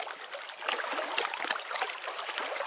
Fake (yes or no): no